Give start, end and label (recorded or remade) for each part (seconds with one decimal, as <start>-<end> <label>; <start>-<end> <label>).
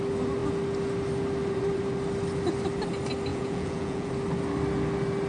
0.0-3.3 recorded; 3.3-4.1 remade; 4.1-5.3 recorded